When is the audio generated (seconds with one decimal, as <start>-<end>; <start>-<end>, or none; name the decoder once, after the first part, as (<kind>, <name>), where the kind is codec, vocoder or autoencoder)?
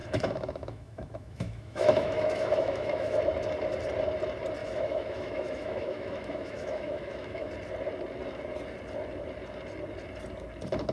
0.0-3.2 (autoencoder, DAC-VAE); 4.6-7.5